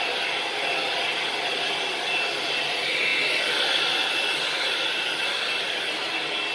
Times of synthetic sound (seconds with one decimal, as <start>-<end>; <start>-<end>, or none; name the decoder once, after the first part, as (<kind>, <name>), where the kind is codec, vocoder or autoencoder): none